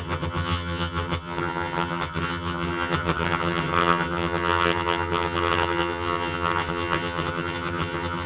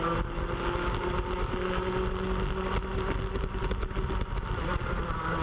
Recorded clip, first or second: second